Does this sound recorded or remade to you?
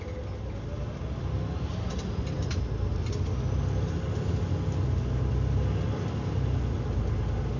recorded